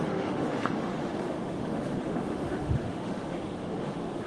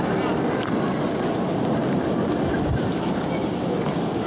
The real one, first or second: second